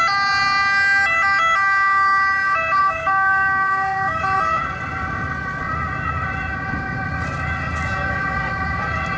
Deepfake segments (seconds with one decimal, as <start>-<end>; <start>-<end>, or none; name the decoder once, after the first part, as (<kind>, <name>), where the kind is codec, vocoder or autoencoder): 2.8-4.2 (codec, DAC)